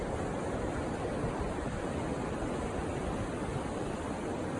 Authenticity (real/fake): real